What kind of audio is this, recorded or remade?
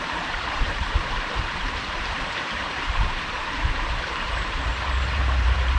remade